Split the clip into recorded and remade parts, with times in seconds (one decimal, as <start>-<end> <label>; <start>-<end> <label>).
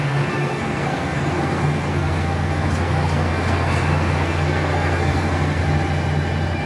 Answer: 0.0-5.6 remade; 5.6-6.7 recorded